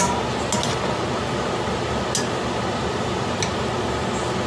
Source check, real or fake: real